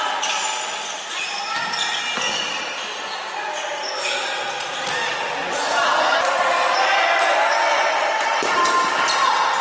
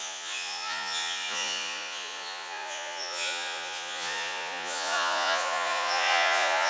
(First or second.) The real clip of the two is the first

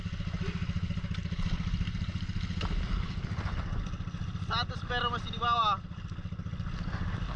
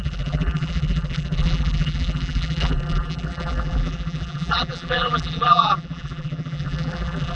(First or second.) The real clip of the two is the first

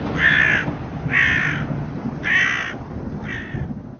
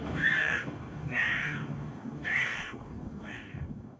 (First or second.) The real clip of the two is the first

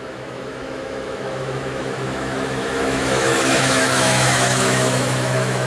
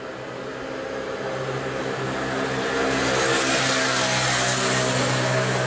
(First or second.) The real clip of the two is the second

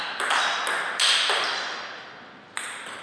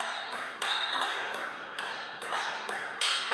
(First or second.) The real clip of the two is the first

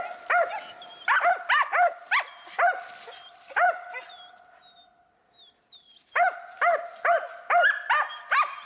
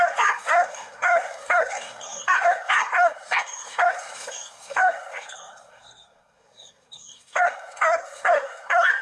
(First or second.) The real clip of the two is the first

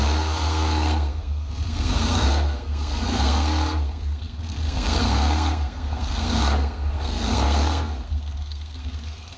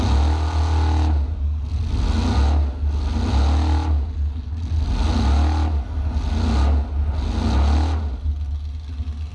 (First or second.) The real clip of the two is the second